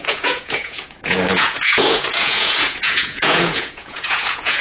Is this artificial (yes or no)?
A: yes